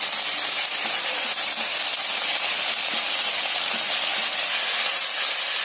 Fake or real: real